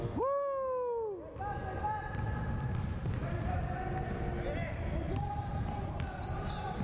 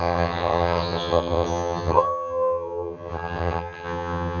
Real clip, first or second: first